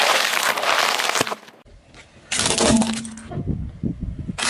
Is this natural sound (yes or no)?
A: yes